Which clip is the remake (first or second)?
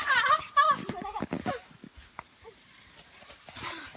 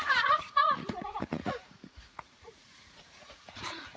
second